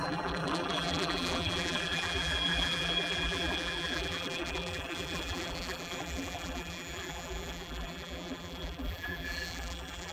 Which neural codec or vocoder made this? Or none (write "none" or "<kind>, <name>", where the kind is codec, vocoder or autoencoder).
vocoder, BigVGAN v2